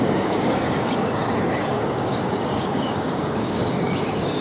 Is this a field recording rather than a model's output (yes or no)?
no